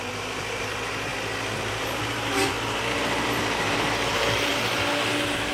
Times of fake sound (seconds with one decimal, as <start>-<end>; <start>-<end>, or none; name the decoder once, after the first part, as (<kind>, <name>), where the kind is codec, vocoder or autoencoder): 0.0-1.1 (vocoder, BigVGAN v2); 1.7-2.4; 3.0-4.5; 5.1-5.5